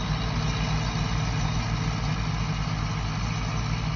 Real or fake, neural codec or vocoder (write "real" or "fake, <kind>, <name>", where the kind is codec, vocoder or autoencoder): real